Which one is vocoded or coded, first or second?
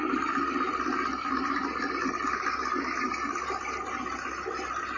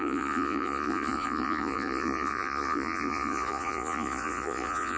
second